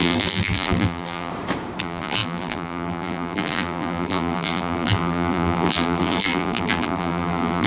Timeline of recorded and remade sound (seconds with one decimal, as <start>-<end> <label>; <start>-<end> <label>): 0.0-1.3 remade; 1.3-1.8 recorded; 1.8-7.7 remade